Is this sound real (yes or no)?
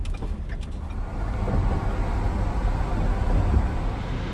yes